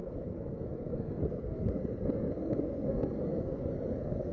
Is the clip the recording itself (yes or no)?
no